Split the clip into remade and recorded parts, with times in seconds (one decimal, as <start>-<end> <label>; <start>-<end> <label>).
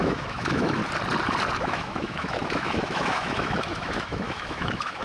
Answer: 0.0-0.8 remade; 0.8-1.6 recorded; 1.6-5.0 remade